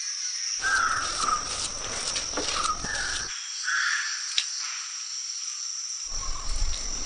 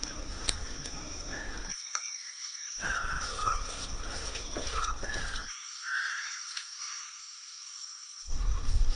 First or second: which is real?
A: first